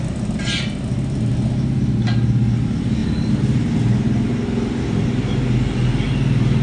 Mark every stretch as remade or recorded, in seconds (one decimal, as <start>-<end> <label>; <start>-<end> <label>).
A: 0.0-6.6 recorded